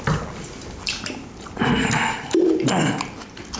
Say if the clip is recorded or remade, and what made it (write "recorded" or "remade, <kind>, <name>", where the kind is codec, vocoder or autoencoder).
remade, vocoder, BigVGAN v2